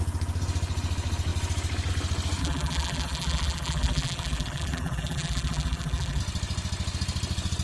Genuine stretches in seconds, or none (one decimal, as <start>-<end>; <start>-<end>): 0.0-2.4; 6.2-7.6